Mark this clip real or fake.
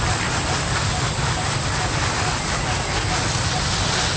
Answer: real